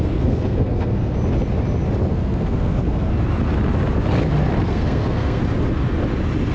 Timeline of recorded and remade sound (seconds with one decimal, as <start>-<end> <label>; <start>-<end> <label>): 0.0-1.1 remade; 1.1-2.1 recorded; 2.1-3.1 remade; 3.1-4.7 recorded; 4.7-5.4 remade; 5.4-6.5 recorded